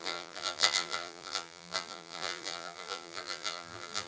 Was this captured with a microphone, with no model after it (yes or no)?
no